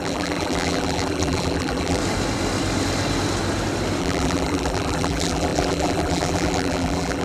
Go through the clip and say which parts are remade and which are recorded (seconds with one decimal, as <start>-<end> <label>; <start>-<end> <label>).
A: 0.0-2.0 remade; 2.0-4.0 recorded; 4.0-7.2 remade

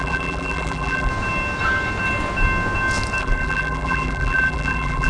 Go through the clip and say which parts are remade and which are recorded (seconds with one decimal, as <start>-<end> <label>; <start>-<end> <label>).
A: 0.0-1.1 remade; 1.1-3.2 recorded; 3.2-5.1 remade

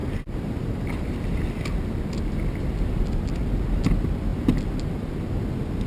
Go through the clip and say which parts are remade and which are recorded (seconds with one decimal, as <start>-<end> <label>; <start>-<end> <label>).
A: 0.0-1.1 remade; 1.1-5.9 recorded

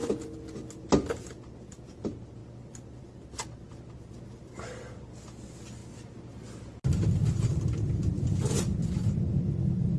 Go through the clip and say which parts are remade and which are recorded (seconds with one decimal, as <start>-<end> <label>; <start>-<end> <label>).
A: 0.0-2.4 remade; 2.4-3.0 recorded; 3.0-5.8 remade; 5.8-7.9 recorded; 7.9-10.0 remade